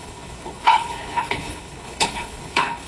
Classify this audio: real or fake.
fake